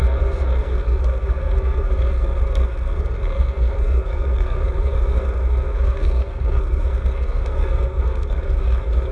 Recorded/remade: remade